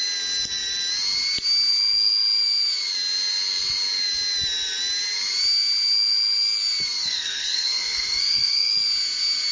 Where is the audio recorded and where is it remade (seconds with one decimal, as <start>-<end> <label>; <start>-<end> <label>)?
0.0-7.0 recorded; 7.0-8.7 remade; 8.7-9.5 recorded